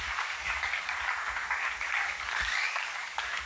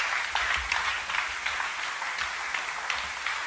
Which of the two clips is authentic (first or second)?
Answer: second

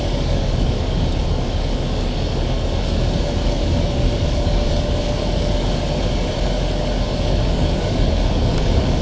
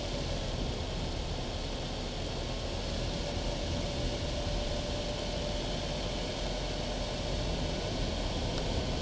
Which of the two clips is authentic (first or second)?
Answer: second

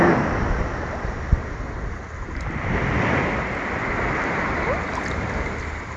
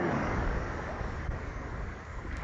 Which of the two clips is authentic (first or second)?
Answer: first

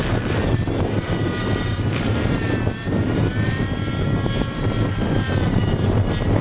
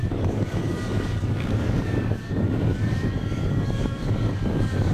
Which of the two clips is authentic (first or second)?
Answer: first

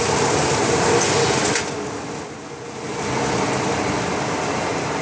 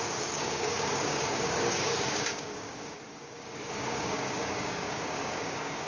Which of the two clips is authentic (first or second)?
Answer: first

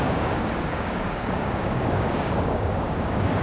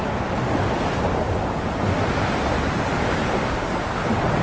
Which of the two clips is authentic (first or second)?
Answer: second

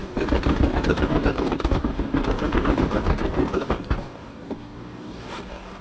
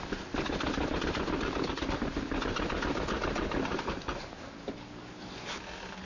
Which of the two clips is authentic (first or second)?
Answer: second